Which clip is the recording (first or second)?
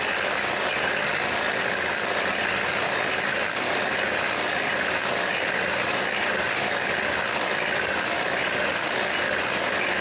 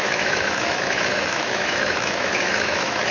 first